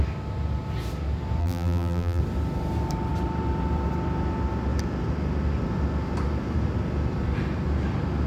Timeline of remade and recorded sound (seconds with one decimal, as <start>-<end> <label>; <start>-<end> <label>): 0.0-1.4 recorded; 1.4-2.2 remade; 2.2-8.3 recorded